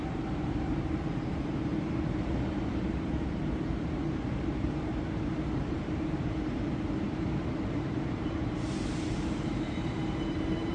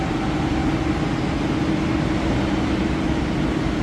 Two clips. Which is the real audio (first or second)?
second